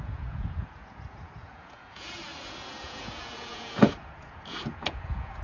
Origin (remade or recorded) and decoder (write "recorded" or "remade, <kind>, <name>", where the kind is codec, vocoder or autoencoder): remade, vocoder, Vocos